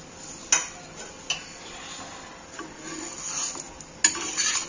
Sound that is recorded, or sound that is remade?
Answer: recorded